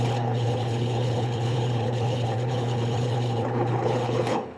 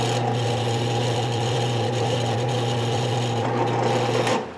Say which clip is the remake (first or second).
first